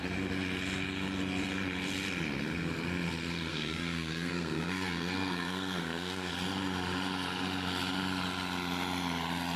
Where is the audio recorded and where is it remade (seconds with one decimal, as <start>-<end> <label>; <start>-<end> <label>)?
0.0-3.5 recorded; 3.5-6.3 remade; 6.3-9.6 recorded